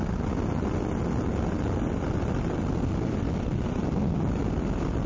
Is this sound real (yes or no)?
yes